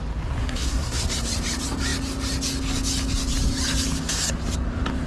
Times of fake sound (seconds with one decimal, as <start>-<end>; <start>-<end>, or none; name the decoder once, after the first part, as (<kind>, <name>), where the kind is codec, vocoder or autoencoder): 0.4-1.0 (codec, SNAC)